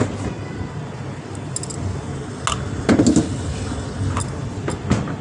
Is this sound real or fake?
real